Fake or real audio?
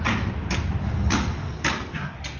real